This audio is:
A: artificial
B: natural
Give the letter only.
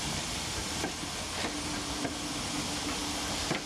B